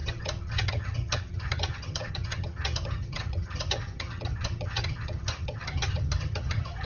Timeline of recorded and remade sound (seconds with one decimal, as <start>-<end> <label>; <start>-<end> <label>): 0.0-6.8 remade

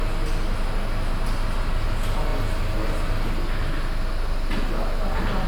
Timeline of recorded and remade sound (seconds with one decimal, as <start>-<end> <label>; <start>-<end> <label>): 0.0-5.5 recorded

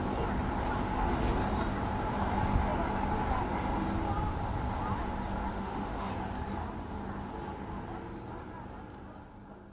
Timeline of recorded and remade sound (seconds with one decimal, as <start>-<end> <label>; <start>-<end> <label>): 0.0-5.5 recorded; 5.5-6.1 remade; 6.1-9.7 recorded

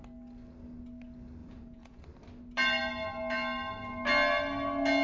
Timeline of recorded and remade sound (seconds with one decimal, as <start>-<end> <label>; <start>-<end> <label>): 0.0-1.4 recorded; 1.4-2.0 remade; 2.0-5.0 recorded